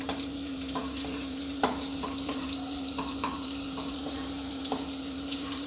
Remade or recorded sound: remade